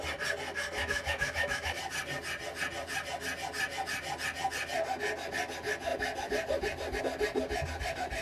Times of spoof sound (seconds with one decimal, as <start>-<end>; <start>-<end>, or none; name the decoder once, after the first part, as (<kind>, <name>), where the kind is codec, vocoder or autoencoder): 0.8-1.8 (autoencoder, DAC-VAE)

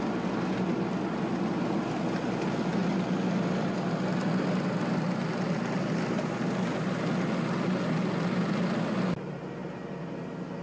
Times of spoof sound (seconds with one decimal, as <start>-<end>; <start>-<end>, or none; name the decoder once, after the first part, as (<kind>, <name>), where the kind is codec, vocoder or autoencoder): none

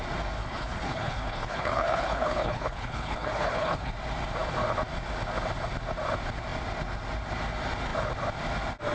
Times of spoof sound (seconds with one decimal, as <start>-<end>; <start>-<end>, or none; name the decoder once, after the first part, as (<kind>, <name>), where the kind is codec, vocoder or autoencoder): 0.4-3.9 (codec, HILCodec)

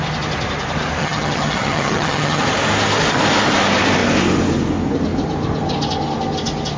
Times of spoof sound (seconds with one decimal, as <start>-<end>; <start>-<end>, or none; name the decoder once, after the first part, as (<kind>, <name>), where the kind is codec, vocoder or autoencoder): 1.0-2.4 (vocoder, HiFi-GAN)